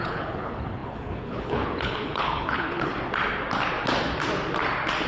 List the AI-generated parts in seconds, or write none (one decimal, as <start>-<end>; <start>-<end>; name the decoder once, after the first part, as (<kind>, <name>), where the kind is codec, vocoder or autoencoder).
0.0-2.9 (codec, HILCodec)